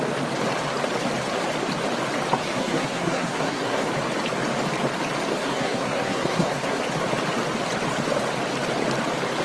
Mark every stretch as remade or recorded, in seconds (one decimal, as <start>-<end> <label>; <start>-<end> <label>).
0.0-2.4 recorded; 2.4-3.9 remade; 3.9-5.3 recorded; 5.3-6.8 remade; 6.8-9.4 recorded